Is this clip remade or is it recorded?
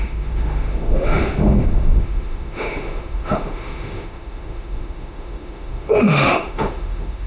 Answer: remade